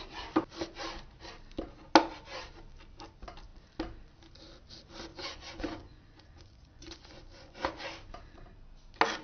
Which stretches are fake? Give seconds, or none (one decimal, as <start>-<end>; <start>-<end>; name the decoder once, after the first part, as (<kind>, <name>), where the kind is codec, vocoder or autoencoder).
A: 5.1-7.8 (vocoder, Vocos)